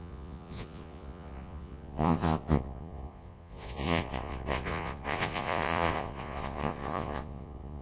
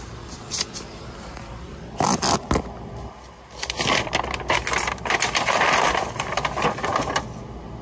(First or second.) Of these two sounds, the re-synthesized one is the first